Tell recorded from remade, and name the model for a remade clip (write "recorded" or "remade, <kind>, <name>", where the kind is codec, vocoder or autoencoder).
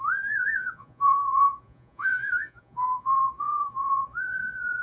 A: remade, vocoder, Vocos